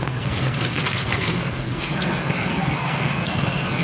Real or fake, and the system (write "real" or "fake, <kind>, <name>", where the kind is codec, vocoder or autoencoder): fake, codec, SNAC